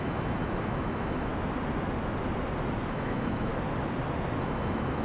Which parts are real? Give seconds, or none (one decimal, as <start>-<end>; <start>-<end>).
1.3-2.9; 3.5-4.4